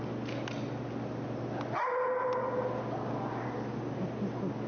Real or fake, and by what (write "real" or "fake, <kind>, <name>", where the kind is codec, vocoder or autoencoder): real